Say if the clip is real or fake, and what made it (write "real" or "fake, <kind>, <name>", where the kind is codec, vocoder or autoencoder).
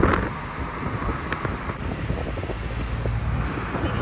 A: real